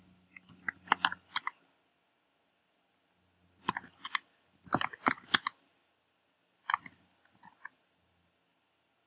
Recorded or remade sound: recorded